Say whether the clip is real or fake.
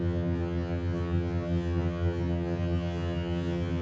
fake